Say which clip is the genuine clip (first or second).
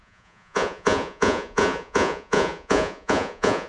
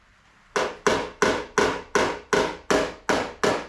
second